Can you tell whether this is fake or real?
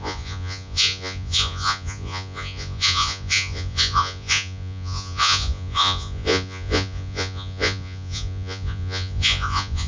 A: fake